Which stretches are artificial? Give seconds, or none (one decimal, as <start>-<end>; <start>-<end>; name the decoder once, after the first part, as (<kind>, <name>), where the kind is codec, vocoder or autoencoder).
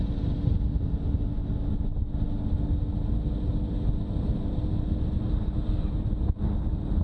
none